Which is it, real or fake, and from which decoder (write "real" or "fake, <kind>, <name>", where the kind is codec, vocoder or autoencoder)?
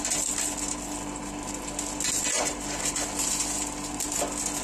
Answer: real